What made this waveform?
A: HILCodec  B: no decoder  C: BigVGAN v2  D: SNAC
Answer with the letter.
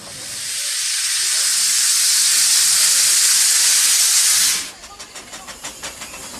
B